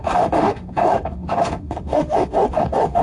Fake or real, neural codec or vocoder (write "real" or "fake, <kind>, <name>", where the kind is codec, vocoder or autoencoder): fake, autoencoder, DAC-VAE